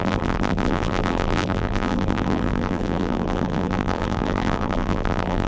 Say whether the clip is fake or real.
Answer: fake